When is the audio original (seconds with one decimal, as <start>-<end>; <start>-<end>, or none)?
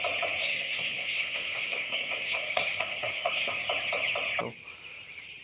0.0-0.4; 3.6-5.4